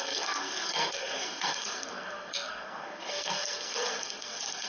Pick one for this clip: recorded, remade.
remade